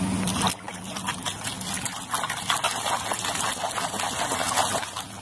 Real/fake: real